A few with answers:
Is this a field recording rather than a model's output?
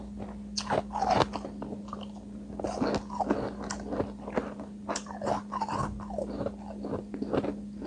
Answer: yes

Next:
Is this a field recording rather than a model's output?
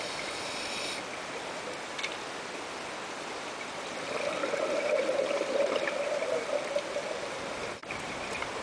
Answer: yes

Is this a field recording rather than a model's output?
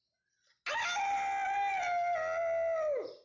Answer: yes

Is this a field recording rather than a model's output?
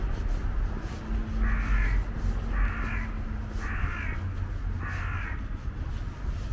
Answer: yes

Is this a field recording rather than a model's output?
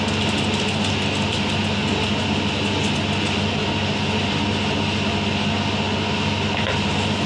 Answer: yes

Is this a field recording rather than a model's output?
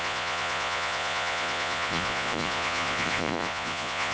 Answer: no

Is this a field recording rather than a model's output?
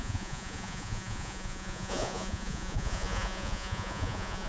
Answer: no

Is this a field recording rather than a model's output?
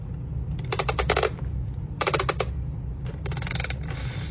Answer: yes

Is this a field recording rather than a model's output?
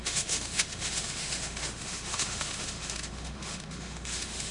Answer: no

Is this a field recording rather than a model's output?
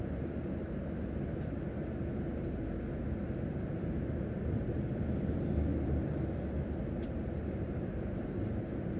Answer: yes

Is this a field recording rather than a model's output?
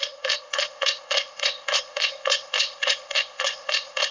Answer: no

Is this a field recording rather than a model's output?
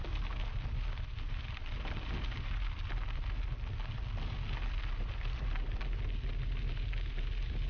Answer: yes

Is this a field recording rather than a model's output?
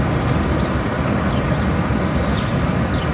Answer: yes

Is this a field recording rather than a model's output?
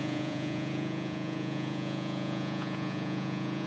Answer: no